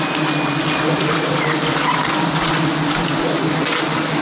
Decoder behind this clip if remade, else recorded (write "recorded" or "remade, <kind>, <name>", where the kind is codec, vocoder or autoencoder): recorded